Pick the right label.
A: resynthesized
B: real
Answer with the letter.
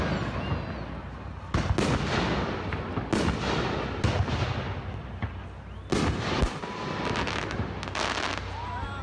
B